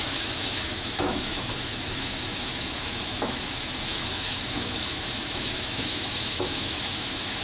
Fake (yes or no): yes